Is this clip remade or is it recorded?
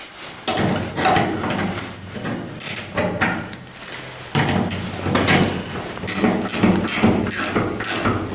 recorded